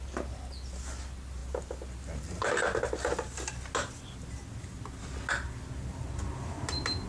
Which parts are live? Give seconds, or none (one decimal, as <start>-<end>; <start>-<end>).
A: 0.0-7.1